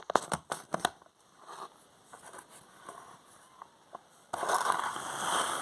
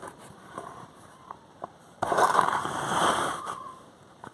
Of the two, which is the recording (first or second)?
first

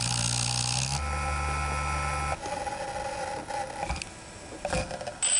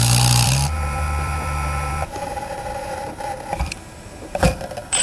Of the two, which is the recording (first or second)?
first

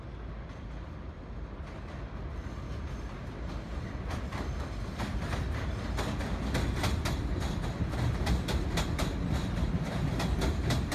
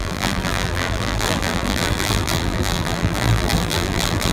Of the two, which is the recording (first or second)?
first